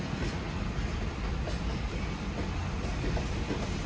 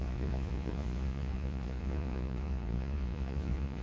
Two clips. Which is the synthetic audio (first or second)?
second